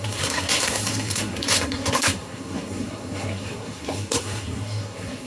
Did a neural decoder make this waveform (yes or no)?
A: yes